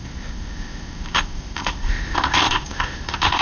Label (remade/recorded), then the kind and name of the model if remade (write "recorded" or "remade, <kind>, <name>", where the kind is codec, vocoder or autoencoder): remade, codec, ZipCodec